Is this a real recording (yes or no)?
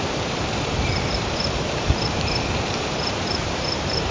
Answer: no